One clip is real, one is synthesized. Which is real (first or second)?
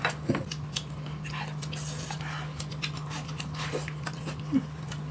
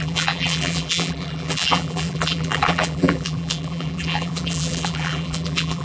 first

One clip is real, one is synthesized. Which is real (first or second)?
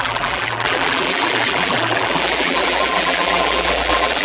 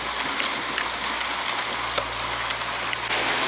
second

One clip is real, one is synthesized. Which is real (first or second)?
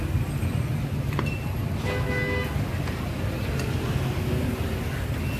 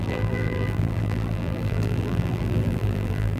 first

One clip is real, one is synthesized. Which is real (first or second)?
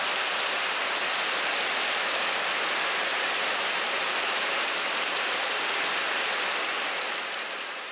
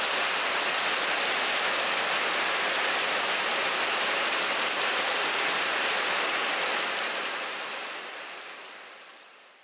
second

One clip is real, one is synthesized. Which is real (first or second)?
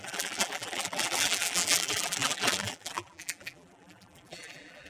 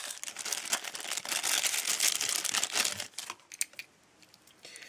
second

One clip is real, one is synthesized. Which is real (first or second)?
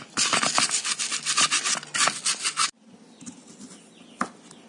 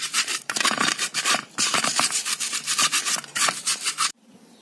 first